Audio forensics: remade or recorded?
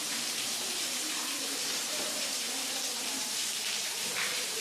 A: remade